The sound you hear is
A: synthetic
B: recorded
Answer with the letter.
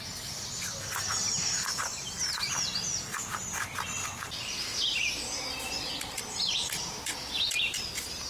B